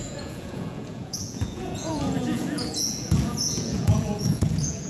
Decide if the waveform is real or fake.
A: fake